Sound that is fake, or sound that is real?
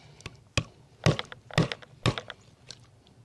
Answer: real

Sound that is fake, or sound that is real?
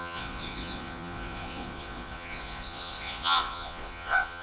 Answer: fake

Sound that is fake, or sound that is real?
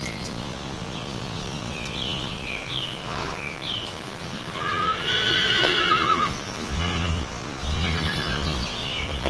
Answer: fake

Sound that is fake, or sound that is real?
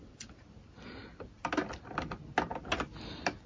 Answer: real